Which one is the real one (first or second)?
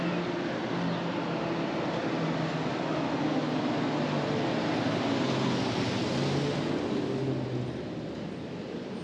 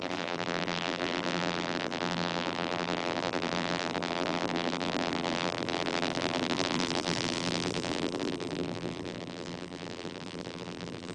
first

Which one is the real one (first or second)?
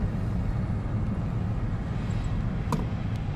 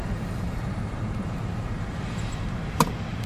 first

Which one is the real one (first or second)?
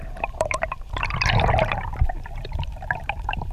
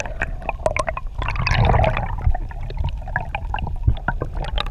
second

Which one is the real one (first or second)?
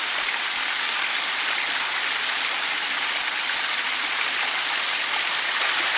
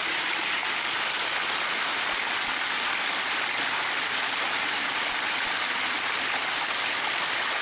second